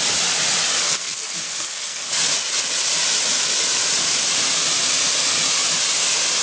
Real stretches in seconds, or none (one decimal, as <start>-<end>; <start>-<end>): 0.0-0.8; 2.1-6.4